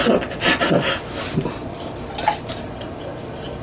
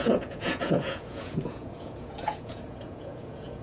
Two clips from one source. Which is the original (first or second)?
first